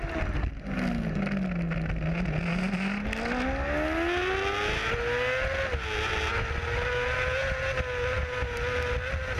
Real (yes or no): yes